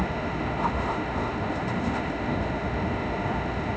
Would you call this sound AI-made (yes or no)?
yes